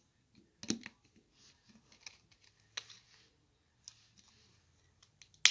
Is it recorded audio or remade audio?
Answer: recorded